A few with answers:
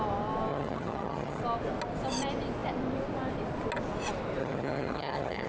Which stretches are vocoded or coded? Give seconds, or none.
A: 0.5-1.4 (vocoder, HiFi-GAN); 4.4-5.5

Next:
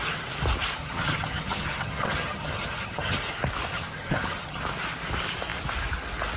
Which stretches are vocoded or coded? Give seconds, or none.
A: 0.8-3.2 (vocoder, HiFi-GAN); 3.7-4.6

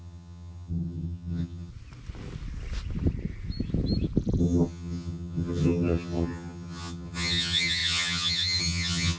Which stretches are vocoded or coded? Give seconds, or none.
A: 0.0-1.7 (vocoder, HiFi-GAN); 4.4-9.2

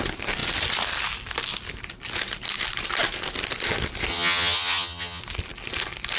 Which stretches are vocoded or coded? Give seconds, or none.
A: 4.1-5.2 (vocoder, HiFi-GAN)

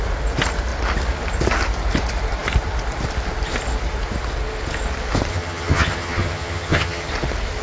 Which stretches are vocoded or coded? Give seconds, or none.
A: 5.3-7.1 (vocoder, HiFi-GAN)

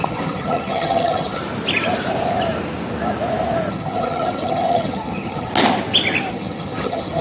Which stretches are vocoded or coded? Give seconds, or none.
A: 0.0-1.4 (vocoder, HiFi-GAN); 3.7-5.5; 6.3-7.2

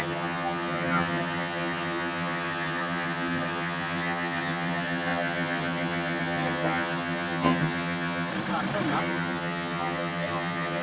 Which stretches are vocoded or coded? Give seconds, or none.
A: 0.0-8.3 (vocoder, HiFi-GAN); 9.0-10.8